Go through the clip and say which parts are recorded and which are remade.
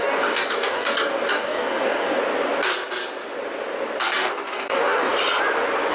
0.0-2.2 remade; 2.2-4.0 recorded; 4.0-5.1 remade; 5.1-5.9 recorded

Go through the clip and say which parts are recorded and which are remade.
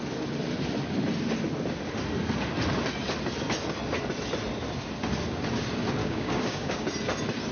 0.0-6.0 recorded; 6.0-6.9 remade; 6.9-7.5 recorded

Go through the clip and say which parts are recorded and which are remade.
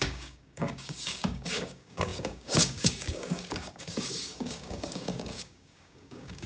0.0-6.5 remade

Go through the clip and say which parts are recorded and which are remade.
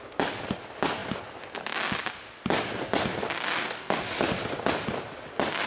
0.0-3.6 recorded; 3.6-4.1 remade; 4.1-5.7 recorded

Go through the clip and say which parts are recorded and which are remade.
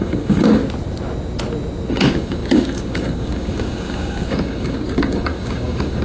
0.0-0.6 remade; 0.6-1.9 recorded; 1.9-6.0 remade